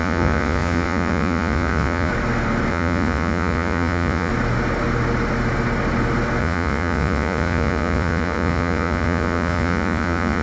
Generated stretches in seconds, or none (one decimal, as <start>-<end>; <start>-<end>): 0.0-2.1; 2.7-4.3; 6.4-10.4